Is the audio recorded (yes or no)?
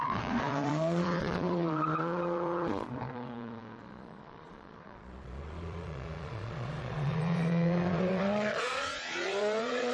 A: no